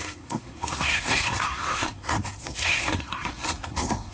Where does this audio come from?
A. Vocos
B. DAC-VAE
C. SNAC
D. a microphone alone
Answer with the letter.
C